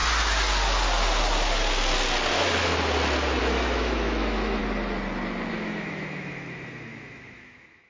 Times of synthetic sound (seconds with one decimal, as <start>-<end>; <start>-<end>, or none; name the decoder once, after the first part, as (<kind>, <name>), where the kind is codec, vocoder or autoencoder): 2.3-2.7 (autoencoder, DAC-VAE); 3.4-4.6; 5.5-7.9